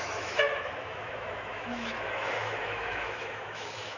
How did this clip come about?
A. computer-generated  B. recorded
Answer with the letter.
A